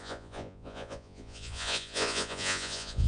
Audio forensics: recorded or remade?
remade